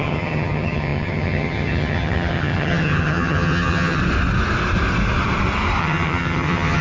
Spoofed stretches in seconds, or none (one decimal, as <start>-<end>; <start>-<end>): 0.0-4.0; 5.8-6.8